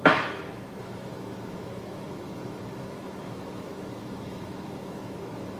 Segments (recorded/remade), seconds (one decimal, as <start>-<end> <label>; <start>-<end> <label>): 0.0-5.6 remade